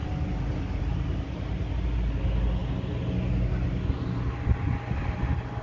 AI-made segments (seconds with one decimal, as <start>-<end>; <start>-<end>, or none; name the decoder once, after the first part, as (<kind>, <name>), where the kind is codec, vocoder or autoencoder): none